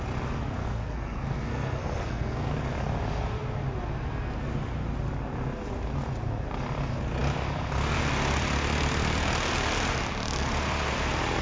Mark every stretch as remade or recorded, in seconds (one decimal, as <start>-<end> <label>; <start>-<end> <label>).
0.0-0.6 recorded; 0.6-2.5 remade; 2.5-11.4 recorded